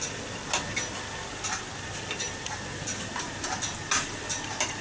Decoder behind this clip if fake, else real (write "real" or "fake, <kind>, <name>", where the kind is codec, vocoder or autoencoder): real